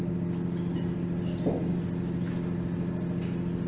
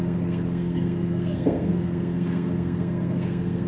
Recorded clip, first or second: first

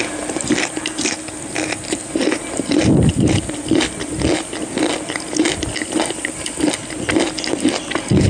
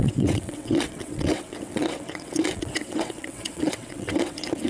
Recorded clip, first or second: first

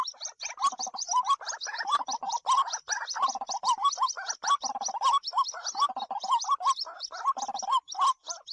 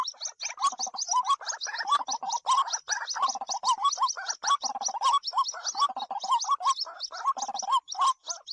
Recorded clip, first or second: second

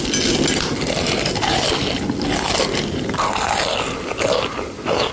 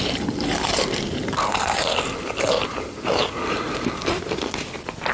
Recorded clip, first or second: first